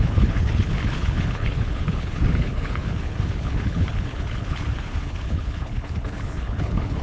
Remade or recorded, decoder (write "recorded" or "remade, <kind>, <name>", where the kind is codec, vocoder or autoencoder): remade, codec, HILCodec